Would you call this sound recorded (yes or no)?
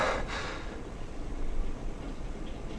no